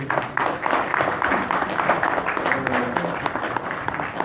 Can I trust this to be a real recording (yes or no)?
yes